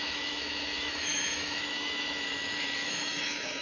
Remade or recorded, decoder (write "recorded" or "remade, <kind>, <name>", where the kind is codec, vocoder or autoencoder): remade, autoencoder, DAC-VAE